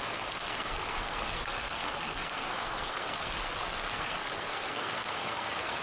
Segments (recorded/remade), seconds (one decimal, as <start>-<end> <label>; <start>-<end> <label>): 0.0-5.8 remade